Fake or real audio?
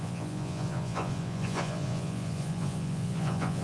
fake